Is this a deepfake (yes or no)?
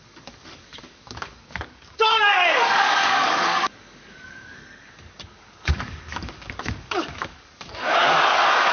yes